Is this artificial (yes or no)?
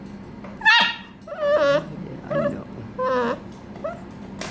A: no